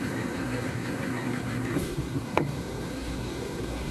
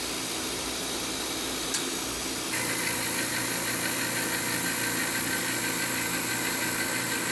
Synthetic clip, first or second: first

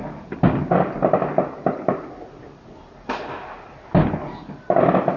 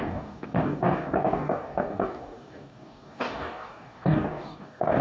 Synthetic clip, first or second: second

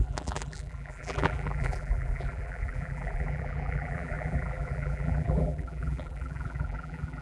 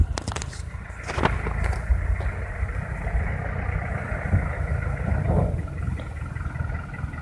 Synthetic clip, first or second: first